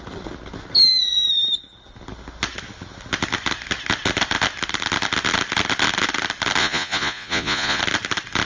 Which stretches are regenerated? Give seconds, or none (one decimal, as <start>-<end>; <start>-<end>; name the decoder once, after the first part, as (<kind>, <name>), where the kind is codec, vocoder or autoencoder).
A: 6.6-7.8 (vocoder, Vocos)